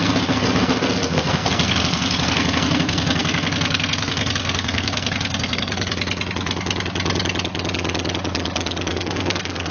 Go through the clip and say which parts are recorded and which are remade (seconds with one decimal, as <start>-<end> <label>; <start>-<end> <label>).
0.0-5.9 remade; 5.9-8.9 recorded; 8.9-9.7 remade